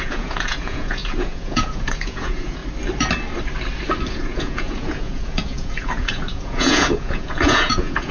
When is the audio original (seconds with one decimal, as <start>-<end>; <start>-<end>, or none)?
2.6-4.1